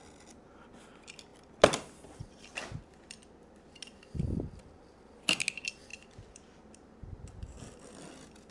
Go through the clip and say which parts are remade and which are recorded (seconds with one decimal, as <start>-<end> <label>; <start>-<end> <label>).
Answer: 0.0-8.5 recorded